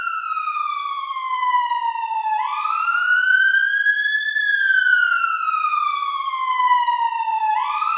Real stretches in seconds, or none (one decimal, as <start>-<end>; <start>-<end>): 0.0-8.0